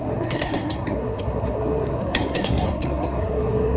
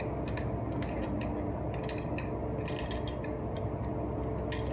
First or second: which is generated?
first